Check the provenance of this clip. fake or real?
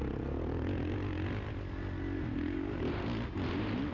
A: real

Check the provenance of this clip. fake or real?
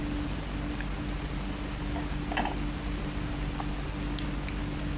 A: real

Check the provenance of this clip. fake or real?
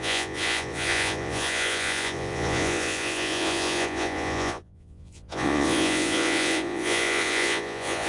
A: fake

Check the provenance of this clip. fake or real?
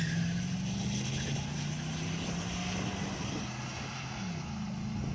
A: real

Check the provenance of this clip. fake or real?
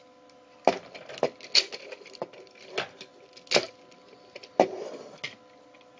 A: real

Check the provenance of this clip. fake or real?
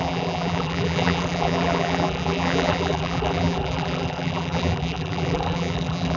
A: fake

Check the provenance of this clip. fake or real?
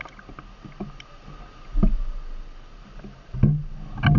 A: real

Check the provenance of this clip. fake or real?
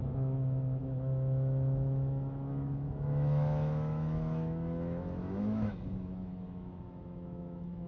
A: fake